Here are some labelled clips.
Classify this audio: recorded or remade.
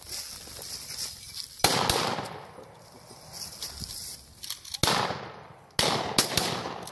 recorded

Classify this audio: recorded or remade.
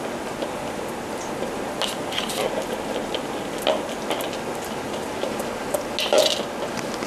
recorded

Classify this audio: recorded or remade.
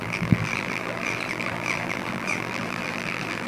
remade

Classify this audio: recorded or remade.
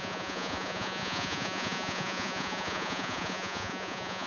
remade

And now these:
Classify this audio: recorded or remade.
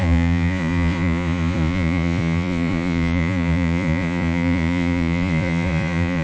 remade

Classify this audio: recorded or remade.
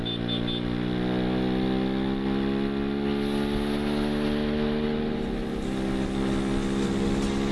recorded